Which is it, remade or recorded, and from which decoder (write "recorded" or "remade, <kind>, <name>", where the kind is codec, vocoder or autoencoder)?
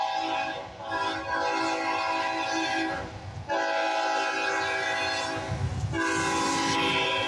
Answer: recorded